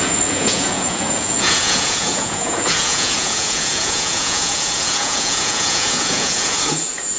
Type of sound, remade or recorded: remade